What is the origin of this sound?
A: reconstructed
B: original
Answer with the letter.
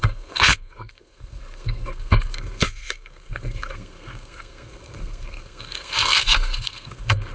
A